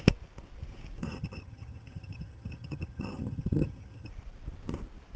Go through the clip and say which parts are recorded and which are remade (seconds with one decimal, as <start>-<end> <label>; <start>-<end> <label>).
0.0-1.0 recorded; 1.0-4.1 remade; 4.1-5.2 recorded